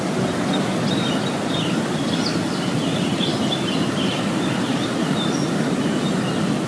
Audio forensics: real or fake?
real